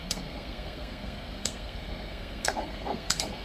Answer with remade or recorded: remade